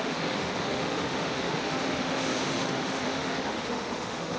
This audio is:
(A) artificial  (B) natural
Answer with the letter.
A